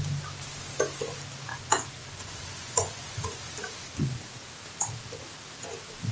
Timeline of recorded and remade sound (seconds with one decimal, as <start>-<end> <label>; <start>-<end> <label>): 0.0-1.5 recorded; 1.5-3.4 remade; 3.4-6.1 recorded